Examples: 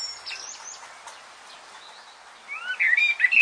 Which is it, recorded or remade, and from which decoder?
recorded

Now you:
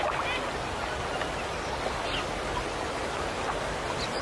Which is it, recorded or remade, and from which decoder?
recorded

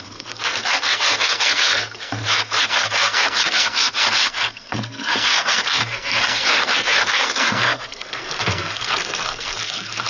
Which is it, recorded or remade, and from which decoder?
remade, codec, SNAC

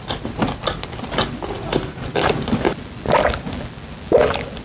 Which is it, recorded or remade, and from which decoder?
recorded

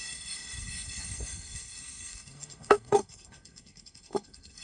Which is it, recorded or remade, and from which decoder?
remade, codec, SNAC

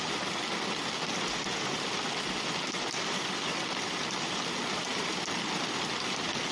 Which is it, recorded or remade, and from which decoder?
recorded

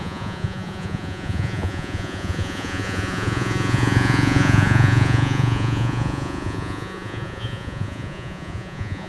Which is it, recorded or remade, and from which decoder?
remade, vocoder, Vocos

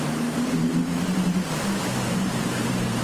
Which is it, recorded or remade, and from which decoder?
remade, vocoder, BigVGAN v2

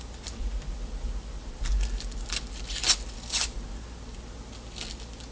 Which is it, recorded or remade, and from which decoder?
recorded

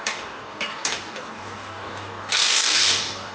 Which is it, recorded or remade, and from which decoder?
remade, codec, DAC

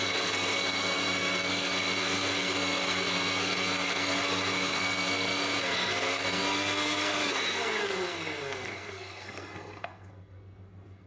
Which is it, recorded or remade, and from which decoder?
remade, codec, SNAC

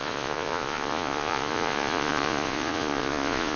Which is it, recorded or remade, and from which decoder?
remade, vocoder, Vocos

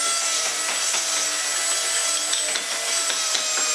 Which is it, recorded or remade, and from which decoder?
recorded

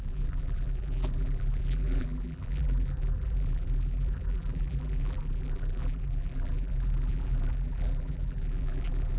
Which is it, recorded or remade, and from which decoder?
remade, vocoder, BigVGAN v2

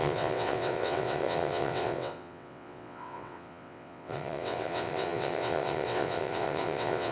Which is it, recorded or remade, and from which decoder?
remade, vocoder, WaveNeXt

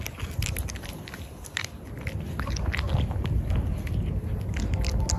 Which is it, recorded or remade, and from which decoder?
recorded